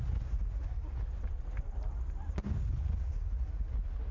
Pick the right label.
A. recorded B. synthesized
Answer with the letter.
A